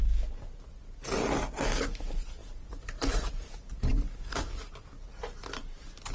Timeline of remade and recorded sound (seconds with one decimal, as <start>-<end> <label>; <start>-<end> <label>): 0.0-2.4 recorded; 2.4-4.7 remade; 4.7-6.1 recorded